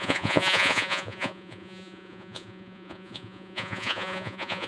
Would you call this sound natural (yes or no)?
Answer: no